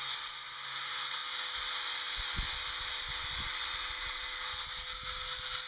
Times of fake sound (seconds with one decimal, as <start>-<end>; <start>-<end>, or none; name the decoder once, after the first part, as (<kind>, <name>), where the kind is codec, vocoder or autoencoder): none